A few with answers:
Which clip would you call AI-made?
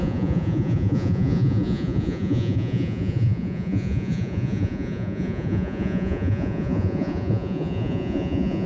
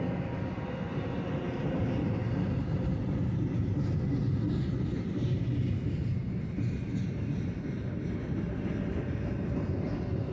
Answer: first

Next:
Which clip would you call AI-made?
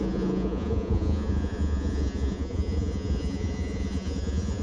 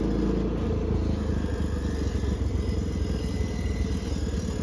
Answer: first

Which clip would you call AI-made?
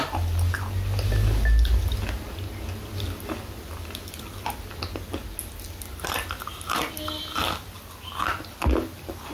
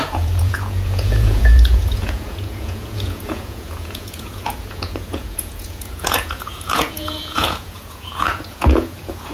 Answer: second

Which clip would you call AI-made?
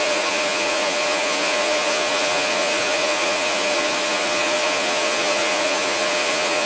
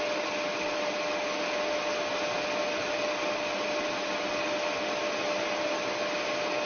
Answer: first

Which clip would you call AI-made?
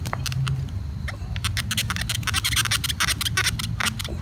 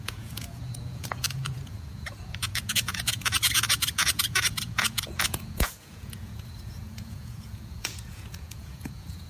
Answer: second